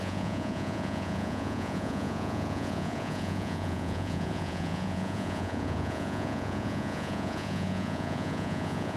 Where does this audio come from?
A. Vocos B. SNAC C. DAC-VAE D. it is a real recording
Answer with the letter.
A